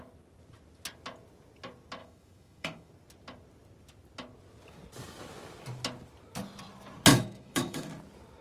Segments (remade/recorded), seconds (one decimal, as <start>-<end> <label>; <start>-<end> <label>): 0.0-2.0 recorded; 2.0-2.9 remade; 2.9-7.1 recorded; 7.1-7.9 remade; 7.9-8.4 recorded